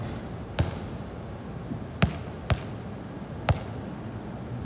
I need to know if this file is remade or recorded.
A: recorded